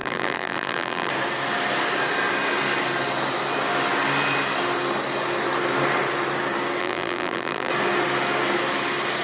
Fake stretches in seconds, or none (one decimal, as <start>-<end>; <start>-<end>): 0.0-1.1; 6.8-7.7